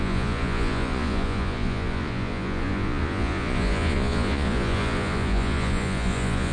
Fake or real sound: fake